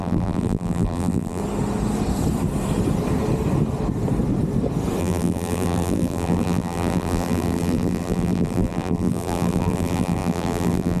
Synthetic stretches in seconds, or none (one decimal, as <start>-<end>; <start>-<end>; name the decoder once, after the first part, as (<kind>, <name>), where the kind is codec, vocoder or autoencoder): 0.0-1.4 (vocoder, BigVGAN v2); 5.0-11.0

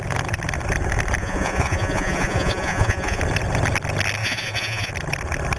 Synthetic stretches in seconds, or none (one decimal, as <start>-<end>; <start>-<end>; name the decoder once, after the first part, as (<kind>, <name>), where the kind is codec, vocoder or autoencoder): 1.2-3.2 (vocoder, Vocos); 4.2-4.9

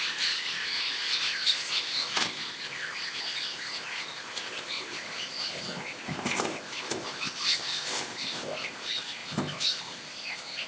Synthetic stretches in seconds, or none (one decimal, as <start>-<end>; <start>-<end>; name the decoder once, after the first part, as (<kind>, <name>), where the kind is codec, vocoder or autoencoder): 0.0-10.7 (codec, ZipCodec)

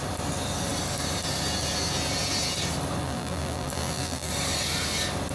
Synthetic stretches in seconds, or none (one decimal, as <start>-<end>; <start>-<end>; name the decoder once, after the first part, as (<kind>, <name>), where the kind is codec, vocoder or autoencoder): 3.0-4.3 (vocoder, BigVGAN v2)

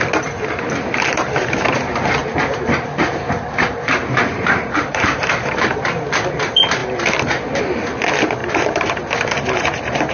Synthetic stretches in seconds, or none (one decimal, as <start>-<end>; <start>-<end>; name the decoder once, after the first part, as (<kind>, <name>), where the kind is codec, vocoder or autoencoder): 2.2-5.8 (vocoder, BigVGAN v2); 6.8-7.6; 8.4-10.1

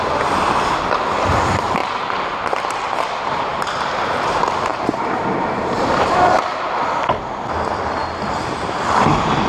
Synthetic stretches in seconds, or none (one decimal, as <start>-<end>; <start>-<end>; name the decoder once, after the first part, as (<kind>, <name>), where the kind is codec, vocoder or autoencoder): 3.5-4.1 (vocoder, BigVGAN v2); 4.7-6.8

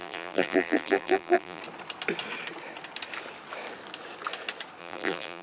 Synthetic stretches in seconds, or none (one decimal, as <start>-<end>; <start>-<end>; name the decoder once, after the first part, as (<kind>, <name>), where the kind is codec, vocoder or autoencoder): 0.0-1.6 (vocoder, BigVGAN v2); 4.8-5.4

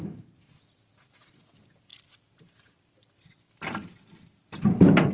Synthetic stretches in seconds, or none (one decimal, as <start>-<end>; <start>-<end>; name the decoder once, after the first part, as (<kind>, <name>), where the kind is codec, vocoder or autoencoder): none